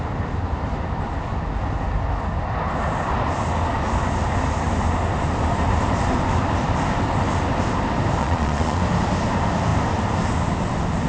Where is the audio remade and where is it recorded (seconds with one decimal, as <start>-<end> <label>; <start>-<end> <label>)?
0.0-8.2 recorded; 8.2-8.8 remade; 8.8-11.1 recorded

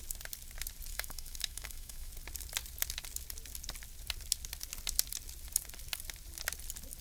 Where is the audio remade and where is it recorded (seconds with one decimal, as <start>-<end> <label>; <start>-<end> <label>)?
0.0-0.9 recorded; 0.9-2.1 remade; 2.1-7.0 recorded

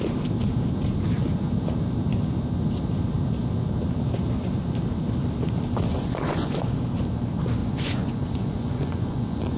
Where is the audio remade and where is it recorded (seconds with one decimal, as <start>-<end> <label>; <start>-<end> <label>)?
0.0-5.9 recorded; 5.9-6.7 remade; 6.7-7.6 recorded; 7.6-9.6 remade